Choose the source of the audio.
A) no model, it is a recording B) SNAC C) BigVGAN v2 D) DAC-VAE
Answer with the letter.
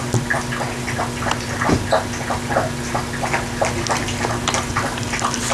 A